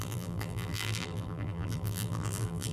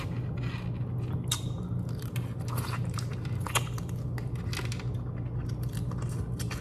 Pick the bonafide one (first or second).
second